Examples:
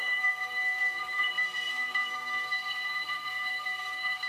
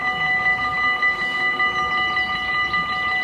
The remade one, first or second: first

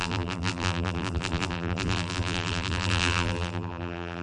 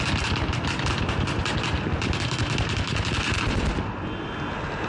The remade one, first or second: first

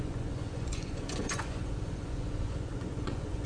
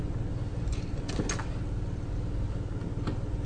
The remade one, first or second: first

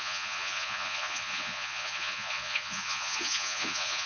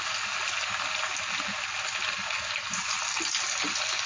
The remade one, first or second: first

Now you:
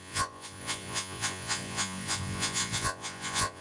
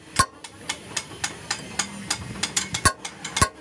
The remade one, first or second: first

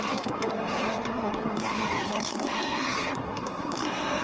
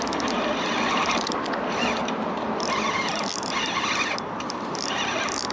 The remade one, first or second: first